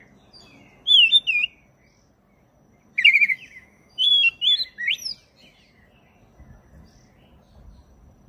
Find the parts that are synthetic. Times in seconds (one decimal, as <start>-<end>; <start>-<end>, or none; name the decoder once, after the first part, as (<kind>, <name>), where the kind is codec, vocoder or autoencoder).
3.1-4.1 (autoencoder, DAC-VAE)